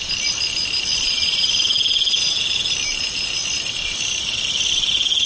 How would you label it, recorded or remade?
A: recorded